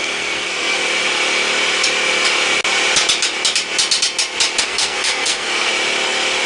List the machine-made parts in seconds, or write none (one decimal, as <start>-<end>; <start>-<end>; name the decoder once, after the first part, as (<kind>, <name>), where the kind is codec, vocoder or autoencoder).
0.0-0.8 (codec, SNAC); 4.6-5.7